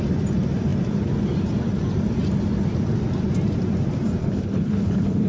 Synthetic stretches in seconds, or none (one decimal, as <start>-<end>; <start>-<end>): 4.2-5.3